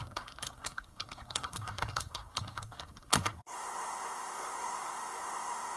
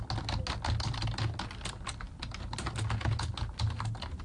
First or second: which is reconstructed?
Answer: first